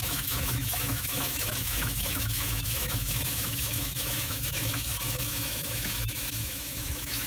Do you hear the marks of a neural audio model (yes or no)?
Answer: yes